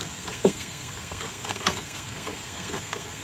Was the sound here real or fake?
fake